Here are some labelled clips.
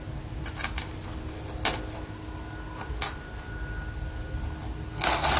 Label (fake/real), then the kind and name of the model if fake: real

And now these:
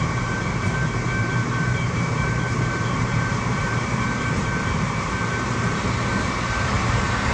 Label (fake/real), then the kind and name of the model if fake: fake, vocoder, BigVGAN v2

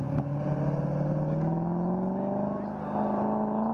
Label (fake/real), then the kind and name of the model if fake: real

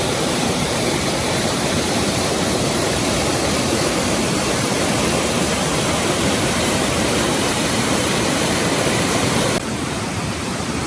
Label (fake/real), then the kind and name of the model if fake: fake, vocoder, BigVGAN v2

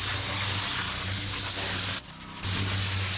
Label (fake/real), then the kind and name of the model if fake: real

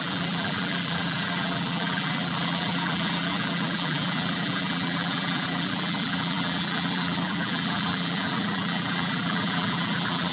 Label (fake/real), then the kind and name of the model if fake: fake, vocoder, BigVGAN v2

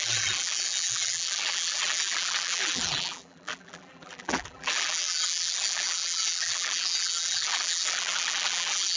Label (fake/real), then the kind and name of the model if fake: fake, vocoder, BigVGAN v2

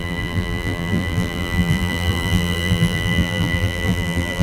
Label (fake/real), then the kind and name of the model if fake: fake, vocoder, BigVGAN v2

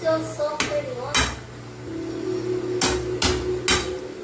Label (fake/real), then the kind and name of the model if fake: real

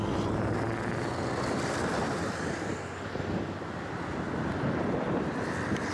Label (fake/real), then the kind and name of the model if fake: real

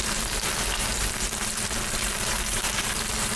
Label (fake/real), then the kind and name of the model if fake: fake, vocoder, BigVGAN v2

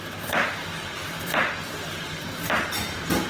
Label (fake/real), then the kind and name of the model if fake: fake, vocoder, BigVGAN v2